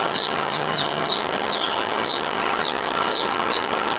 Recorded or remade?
remade